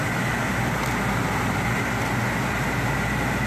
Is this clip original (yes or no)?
yes